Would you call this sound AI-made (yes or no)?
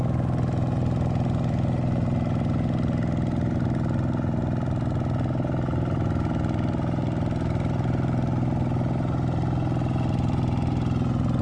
no